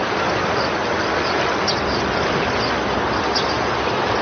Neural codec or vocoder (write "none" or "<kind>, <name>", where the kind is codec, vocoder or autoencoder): none